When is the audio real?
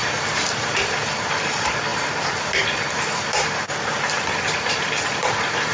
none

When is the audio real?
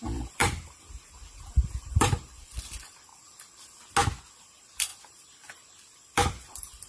0.4-1.8; 3.1-4.4